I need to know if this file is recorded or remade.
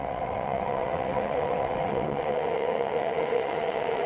remade